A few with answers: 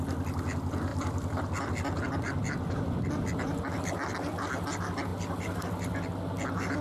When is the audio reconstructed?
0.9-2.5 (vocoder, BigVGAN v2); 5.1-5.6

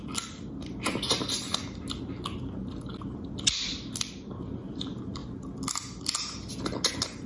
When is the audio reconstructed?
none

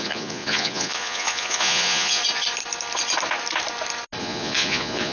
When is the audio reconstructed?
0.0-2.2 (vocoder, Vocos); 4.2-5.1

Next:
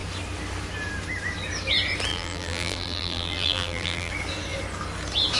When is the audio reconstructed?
2.1-4.1 (vocoder, BigVGAN v2)

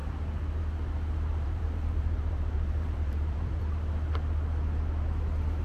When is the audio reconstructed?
1.3-3.5 (vocoder, BigVGAN v2)

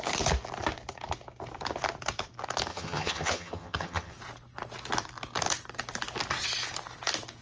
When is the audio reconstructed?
2.7-4.1 (vocoder, HiFi-GAN)